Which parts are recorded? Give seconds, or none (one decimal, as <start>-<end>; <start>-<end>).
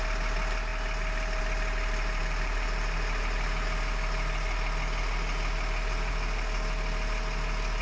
0.0-7.8